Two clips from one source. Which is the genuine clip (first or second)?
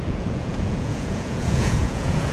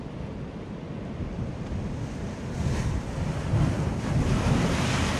second